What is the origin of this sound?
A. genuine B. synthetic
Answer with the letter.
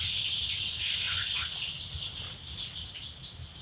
A